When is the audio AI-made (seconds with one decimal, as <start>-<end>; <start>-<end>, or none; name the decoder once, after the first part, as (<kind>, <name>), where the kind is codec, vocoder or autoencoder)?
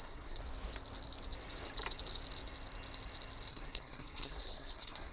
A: 0.0-0.4 (codec, SNAC); 3.5-5.1